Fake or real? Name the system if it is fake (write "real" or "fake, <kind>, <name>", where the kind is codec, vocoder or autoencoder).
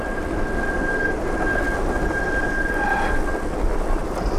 real